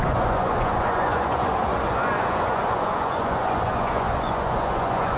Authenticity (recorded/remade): remade